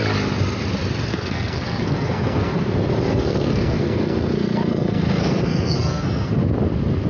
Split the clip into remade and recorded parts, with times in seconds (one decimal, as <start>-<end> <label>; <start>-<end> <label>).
0.0-1.1 recorded; 1.1-2.6 remade; 2.6-3.1 recorded; 3.1-6.4 remade; 6.4-7.1 recorded